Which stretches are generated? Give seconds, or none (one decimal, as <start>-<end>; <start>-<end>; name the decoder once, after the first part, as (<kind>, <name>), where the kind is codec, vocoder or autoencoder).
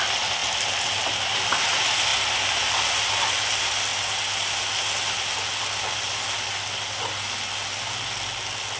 none